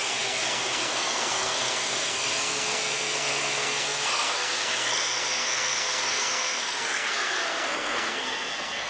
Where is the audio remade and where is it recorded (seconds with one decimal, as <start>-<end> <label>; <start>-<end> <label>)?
0.0-8.9 remade